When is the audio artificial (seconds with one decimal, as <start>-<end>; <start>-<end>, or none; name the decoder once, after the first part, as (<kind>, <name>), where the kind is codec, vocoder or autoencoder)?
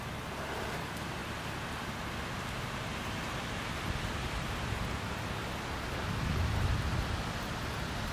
0.0-1.2 (vocoder, BigVGAN v2); 2.4-2.9